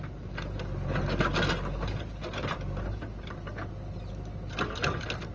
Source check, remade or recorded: recorded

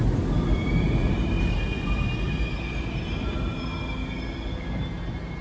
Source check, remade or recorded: recorded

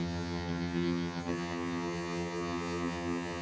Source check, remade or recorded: remade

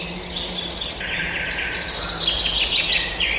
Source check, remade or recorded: recorded